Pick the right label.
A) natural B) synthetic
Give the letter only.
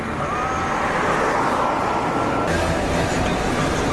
A